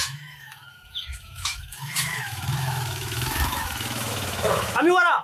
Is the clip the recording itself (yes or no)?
no